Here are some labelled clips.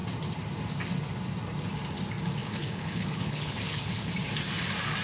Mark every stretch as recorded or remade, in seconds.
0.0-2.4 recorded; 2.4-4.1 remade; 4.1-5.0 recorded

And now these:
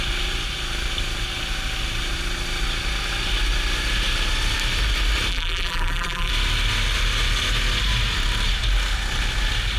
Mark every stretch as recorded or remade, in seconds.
0.0-5.3 recorded; 5.3-6.3 remade; 6.3-9.8 recorded

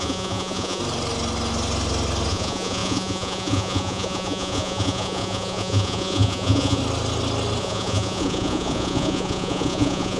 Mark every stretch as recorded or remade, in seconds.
0.0-0.8 remade; 0.8-2.3 recorded; 2.3-6.8 remade; 6.8-7.6 recorded; 7.6-10.2 remade